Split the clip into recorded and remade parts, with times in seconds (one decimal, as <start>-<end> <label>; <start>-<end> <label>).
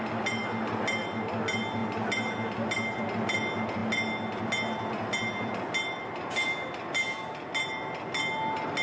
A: 0.0-8.8 recorded